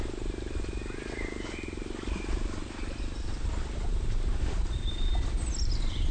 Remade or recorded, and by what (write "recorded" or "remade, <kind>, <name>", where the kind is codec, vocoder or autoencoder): recorded